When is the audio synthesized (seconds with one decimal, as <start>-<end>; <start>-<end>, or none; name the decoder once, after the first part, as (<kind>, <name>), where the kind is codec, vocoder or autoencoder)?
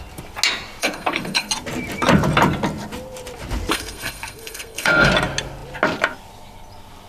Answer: 0.8-1.5 (codec, SNAC); 3.7-5.1